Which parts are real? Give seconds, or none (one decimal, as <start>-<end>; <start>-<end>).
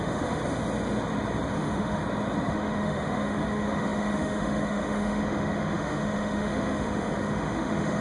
0.4-1.5; 2.0-2.5